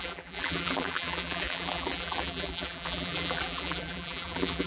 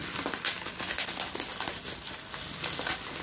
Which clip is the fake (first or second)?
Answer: first